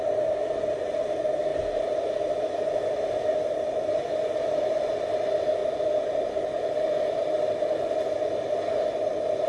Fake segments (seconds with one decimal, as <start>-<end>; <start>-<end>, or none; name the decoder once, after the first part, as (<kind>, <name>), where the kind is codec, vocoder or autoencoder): none

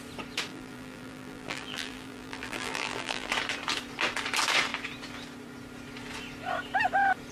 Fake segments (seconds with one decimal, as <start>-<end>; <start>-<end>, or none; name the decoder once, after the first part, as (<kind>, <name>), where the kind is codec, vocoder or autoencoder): 0.5-3.3 (vocoder, BigVGAN v2)

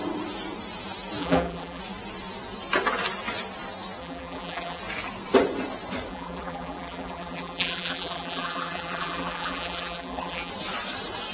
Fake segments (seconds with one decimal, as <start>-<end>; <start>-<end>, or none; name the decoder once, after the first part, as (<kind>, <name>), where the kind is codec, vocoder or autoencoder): 1.2-1.8 (vocoder, BigVGAN v2); 4.0-4.8; 6.1-10.5